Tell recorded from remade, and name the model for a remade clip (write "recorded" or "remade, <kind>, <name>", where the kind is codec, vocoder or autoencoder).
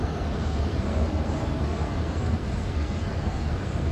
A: remade, codec, SNAC